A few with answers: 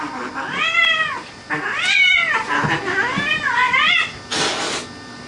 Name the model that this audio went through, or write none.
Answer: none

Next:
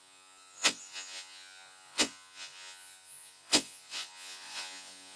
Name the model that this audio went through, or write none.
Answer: vocoder, Vocos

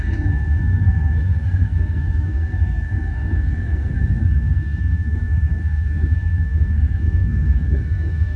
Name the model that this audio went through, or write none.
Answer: codec, SNAC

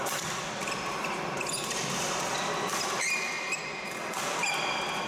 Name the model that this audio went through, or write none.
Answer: none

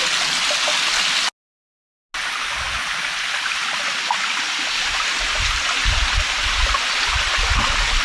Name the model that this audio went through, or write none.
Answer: none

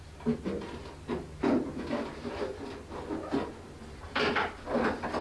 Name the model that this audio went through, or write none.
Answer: none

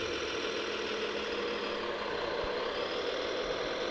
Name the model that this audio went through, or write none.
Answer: none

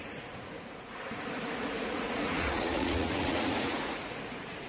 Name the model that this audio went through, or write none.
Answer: vocoder, Vocos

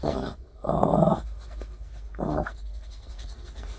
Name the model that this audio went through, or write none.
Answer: codec, SNAC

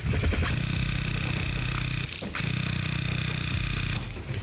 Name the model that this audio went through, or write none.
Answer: none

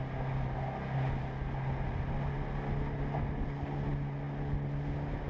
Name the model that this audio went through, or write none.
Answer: none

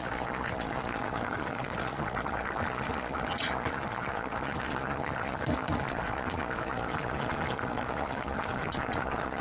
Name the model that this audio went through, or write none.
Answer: vocoder, Vocos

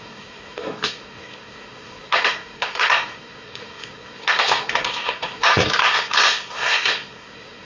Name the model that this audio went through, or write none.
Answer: codec, SNAC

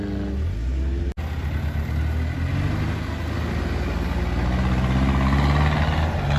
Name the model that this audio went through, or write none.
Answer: none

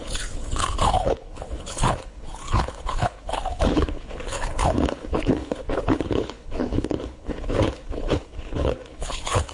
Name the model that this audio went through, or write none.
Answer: codec, HILCodec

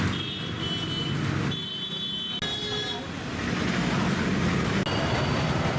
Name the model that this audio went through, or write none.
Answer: none